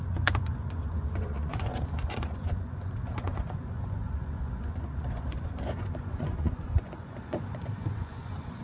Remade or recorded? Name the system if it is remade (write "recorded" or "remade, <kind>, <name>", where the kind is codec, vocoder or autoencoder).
remade, vocoder, Vocos